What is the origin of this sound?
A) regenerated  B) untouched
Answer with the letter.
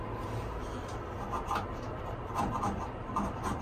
B